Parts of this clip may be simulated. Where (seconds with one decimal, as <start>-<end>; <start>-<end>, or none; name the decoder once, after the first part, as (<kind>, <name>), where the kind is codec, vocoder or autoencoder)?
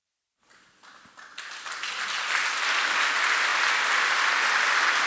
none